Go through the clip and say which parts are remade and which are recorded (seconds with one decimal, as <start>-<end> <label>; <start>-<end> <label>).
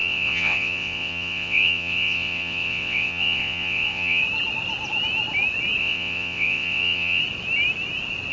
0.0-4.2 remade; 4.2-5.8 recorded; 5.8-7.2 remade; 7.2-8.3 recorded